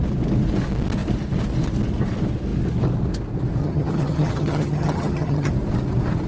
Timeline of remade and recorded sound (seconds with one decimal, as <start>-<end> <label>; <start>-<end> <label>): 0.0-3.6 recorded; 3.6-5.5 remade; 5.5-6.3 recorded